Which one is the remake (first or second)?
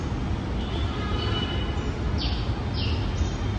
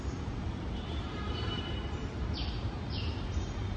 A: second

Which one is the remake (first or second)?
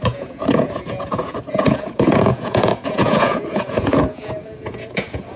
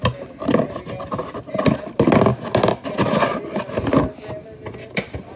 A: first